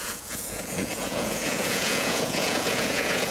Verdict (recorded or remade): remade